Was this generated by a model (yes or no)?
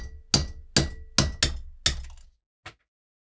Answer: no